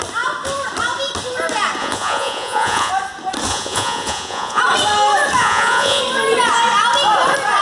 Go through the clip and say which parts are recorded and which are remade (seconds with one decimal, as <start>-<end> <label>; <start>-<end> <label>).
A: 0.0-1.8 recorded; 1.8-2.9 remade; 2.9-3.5 recorded; 3.5-4.6 remade; 4.6-5.4 recorded; 5.4-6.0 remade; 6.0-7.6 recorded